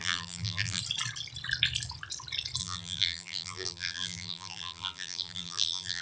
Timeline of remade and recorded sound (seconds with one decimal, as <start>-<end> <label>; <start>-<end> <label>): 0.0-0.8 remade; 0.8-2.6 recorded; 2.6-6.0 remade